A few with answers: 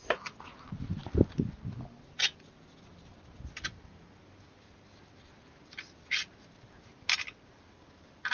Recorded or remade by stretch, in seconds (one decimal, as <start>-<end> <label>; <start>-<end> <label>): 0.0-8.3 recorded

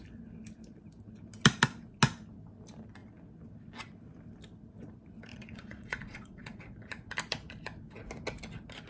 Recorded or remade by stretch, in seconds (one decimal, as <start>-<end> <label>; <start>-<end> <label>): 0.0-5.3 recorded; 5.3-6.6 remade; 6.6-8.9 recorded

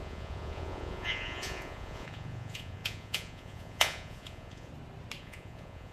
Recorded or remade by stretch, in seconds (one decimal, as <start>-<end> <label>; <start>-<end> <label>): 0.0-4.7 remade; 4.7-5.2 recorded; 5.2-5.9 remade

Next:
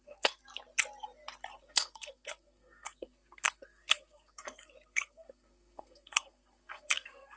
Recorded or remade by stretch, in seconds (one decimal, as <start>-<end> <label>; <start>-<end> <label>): 0.0-0.4 remade; 0.4-1.6 recorded; 1.6-7.4 remade

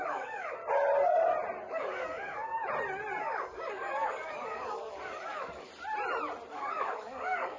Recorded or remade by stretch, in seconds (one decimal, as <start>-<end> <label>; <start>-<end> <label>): 0.0-0.6 remade; 0.6-1.7 recorded; 1.7-2.5 remade; 2.5-3.2 recorded; 3.2-5.7 remade; 5.7-6.5 recorded; 6.5-7.6 remade

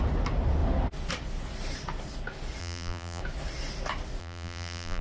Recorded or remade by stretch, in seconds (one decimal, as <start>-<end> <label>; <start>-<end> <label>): 0.0-2.6 recorded; 2.6-3.2 remade; 3.2-4.2 recorded; 4.2-5.0 remade